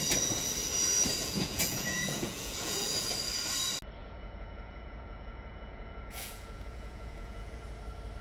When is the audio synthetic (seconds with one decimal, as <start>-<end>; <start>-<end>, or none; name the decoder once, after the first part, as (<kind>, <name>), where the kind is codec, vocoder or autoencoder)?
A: 1.2-3.1 (vocoder, Vocos); 4.0-7.7